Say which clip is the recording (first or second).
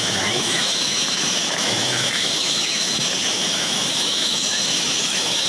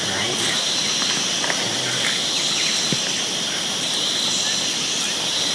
second